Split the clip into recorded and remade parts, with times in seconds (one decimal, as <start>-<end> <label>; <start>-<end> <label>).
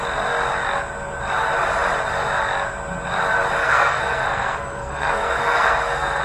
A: 0.0-3.6 recorded; 3.6-6.2 remade